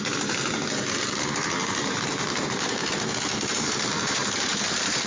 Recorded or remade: remade